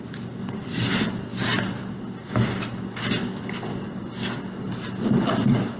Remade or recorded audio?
recorded